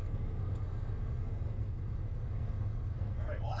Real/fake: fake